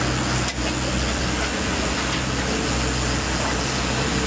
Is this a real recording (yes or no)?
yes